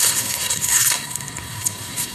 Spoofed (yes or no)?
yes